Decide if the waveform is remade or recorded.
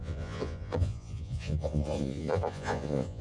remade